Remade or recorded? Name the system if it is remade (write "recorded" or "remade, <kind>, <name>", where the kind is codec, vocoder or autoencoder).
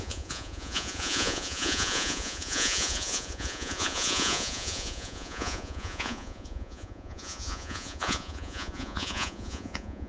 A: remade, vocoder, Vocos